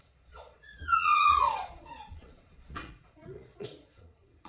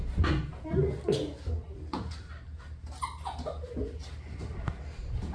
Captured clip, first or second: second